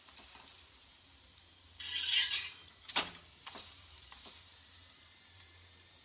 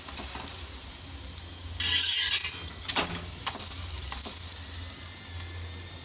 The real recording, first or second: second